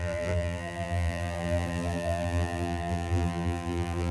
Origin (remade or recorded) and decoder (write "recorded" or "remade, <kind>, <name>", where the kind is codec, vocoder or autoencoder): remade, vocoder, BigVGAN v2